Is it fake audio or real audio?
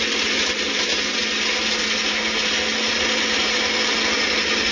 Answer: real